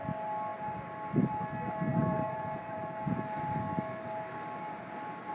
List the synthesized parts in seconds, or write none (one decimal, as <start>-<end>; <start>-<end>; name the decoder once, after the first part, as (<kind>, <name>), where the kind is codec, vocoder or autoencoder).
1.9-3.2 (vocoder, Vocos)